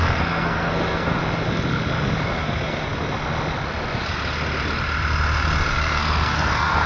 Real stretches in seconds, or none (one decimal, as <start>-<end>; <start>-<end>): 1.2-2.2; 2.9-5.7

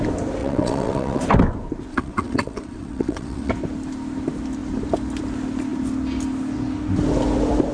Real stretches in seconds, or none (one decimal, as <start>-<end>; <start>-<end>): 0.0-0.4; 1.2-1.9; 3.5-7.7